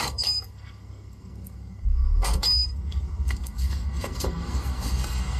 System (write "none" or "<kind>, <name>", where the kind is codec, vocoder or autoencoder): codec, SNAC